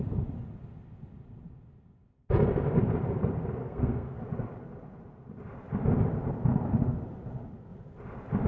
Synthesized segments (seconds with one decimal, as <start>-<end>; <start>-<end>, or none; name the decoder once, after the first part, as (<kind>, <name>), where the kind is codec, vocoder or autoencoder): 3.6-4.2 (codec, SNAC)